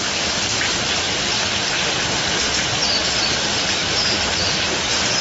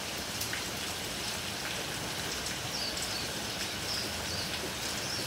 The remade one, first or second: first